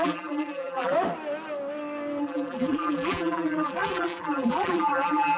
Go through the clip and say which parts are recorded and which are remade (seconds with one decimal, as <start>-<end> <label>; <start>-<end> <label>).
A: 0.0-0.9 remade; 0.9-2.2 recorded; 2.2-5.4 remade